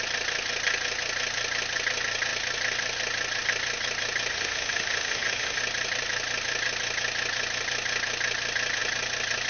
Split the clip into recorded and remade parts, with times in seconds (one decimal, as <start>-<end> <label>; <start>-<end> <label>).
0.0-4.3 recorded; 4.3-5.6 remade; 5.6-9.5 recorded